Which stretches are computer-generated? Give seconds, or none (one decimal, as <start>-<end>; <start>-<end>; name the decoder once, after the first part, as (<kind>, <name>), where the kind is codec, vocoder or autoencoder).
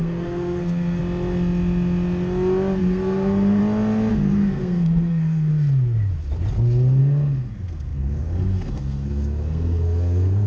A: 0.0-1.0 (codec, SNAC); 2.8-3.6; 4.1-5.5; 7.0-10.5